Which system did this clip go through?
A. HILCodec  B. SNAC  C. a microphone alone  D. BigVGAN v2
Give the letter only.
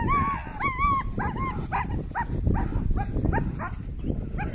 C